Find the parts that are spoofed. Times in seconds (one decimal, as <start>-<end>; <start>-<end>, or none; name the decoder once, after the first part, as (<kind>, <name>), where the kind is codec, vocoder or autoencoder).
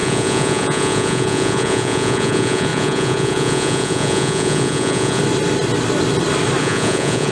0.0-5.2 (vocoder, Vocos); 6.6-7.3